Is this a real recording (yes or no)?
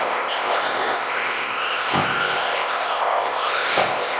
no